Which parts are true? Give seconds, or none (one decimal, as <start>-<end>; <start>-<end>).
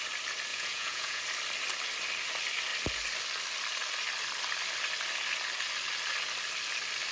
0.0-0.5; 1.2-7.1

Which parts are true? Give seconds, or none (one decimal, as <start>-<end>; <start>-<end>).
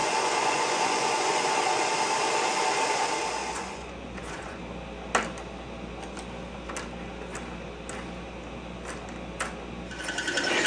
1.9-3.4; 4.6-10.7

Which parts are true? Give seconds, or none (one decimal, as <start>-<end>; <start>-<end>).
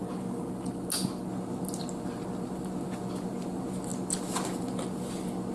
0.0-5.5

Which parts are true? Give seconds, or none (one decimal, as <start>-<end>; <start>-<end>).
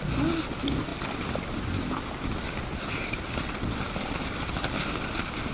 0.0-5.5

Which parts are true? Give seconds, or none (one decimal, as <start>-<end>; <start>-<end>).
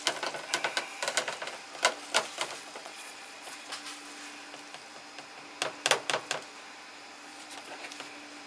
0.0-2.8; 3.7-7.3; 7.9-8.5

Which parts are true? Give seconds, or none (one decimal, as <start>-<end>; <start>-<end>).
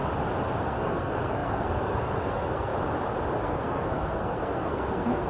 0.0-0.6; 2.7-3.4